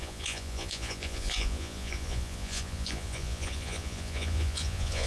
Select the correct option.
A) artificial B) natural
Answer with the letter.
A